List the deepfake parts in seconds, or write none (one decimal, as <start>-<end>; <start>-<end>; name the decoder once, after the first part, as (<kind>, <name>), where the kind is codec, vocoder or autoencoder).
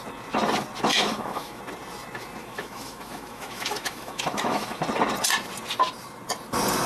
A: 0.9-1.6 (autoencoder, DAC-VAE); 2.4-4.8